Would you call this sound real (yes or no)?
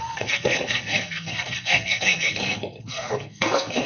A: no